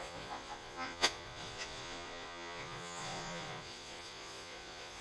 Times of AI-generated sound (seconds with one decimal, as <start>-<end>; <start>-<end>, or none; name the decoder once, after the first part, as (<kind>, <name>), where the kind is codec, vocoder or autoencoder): 0.0-5.0 (vocoder, Vocos)